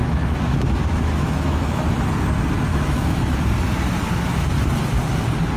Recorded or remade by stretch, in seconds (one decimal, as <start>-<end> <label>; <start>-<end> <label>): 0.0-1.8 remade; 1.8-2.7 recorded; 2.7-3.4 remade; 3.4-5.6 recorded